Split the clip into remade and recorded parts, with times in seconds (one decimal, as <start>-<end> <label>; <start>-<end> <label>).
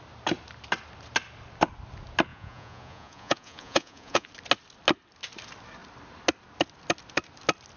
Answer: 0.0-2.3 recorded; 2.3-4.3 remade; 4.3-7.8 recorded